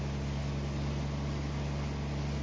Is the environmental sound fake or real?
real